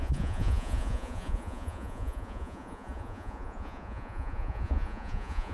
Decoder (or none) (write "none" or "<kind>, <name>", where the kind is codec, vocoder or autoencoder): vocoder, Vocos